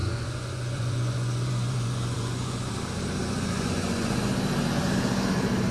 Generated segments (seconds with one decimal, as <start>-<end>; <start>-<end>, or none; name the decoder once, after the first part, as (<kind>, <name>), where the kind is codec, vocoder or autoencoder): 0.0-2.7 (vocoder, Vocos); 3.2-4.3